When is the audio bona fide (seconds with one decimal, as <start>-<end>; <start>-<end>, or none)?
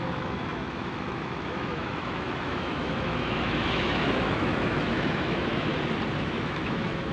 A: 5.7-6.2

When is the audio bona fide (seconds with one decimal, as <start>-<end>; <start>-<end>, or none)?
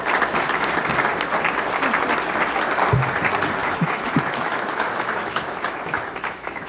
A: 0.0-3.6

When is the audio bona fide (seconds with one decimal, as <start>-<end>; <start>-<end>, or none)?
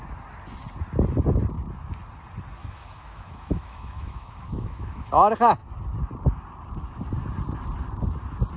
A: 0.0-2.6; 5.1-8.6